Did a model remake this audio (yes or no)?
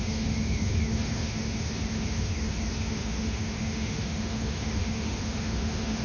yes